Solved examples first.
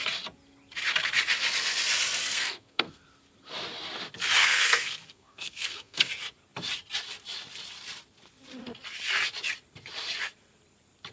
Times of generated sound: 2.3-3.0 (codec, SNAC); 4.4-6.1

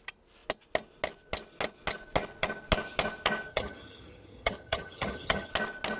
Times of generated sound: 3.5-5.5 (vocoder, HiFi-GAN)

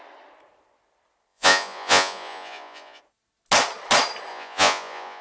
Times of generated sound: 1.3-3.0 (vocoder, Vocos); 4.3-5.2

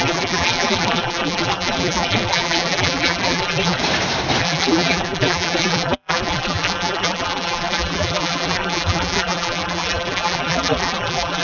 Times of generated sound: 0.0-3.8 (vocoder, BigVGAN v2); 4.4-11.4